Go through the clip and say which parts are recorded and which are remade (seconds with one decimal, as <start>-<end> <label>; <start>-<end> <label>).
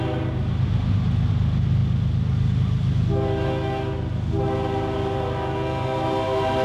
0.0-6.6 recorded